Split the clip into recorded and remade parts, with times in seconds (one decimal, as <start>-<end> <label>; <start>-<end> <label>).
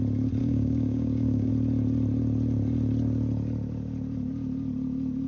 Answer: 0.0-0.4 recorded; 0.4-1.5 remade; 1.5-5.3 recorded